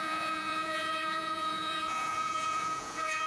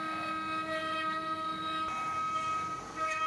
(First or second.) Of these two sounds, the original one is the second